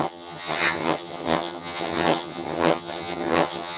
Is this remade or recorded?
remade